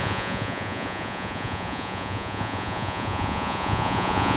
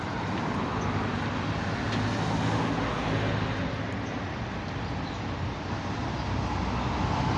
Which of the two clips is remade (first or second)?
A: first